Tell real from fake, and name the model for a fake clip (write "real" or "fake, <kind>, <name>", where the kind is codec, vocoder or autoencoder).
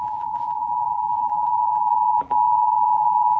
fake, vocoder, BigVGAN v2